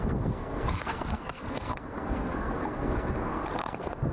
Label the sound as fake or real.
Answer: fake